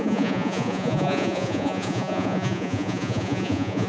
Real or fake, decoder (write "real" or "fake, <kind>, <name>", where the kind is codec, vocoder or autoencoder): fake, vocoder, Vocos